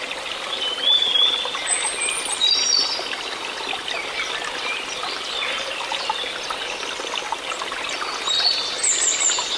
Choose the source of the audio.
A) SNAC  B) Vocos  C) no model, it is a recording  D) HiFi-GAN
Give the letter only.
C